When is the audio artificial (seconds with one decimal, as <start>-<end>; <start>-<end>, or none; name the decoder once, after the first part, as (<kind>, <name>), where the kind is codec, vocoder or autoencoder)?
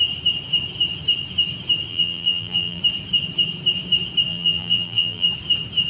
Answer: 1.9-2.8 (vocoder, BigVGAN v2); 4.3-5.3